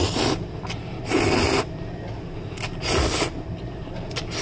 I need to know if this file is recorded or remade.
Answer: recorded